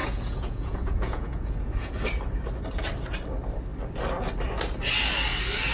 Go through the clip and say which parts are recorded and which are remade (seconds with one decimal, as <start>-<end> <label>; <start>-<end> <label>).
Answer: 0.0-1.9 remade; 1.9-5.7 recorded